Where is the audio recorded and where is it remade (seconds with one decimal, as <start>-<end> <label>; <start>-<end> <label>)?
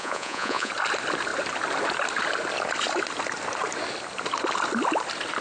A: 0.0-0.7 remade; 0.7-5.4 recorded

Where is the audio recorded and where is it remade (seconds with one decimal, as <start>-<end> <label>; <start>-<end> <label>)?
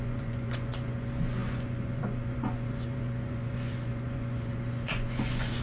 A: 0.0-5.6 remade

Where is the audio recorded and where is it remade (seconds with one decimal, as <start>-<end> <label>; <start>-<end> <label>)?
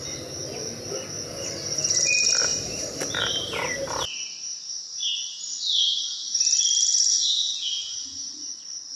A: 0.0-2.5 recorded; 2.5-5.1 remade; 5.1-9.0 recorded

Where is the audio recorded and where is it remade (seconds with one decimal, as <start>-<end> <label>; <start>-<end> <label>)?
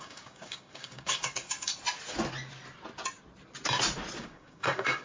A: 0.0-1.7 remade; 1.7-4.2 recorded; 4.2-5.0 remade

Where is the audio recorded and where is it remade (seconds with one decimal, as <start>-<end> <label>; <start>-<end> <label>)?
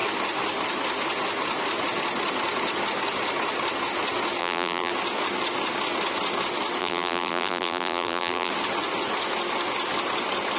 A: 0.0-4.4 recorded; 4.4-4.9 remade; 4.9-6.8 recorded; 6.8-8.5 remade; 8.5-10.6 recorded